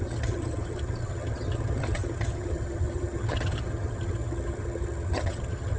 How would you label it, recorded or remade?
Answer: remade